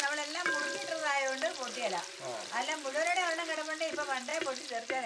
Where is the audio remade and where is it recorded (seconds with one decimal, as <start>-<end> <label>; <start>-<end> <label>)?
0.0-5.1 recorded